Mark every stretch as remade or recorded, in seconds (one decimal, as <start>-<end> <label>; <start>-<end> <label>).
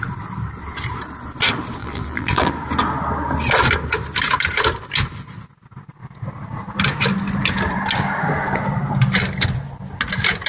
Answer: 0.0-1.8 recorded; 1.8-2.5 remade; 2.5-10.5 recorded